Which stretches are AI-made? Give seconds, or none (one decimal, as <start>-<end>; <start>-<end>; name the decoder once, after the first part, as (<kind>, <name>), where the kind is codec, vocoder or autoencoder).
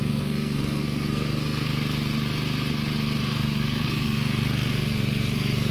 0.0-1.7 (codec, SNAC); 3.2-5.7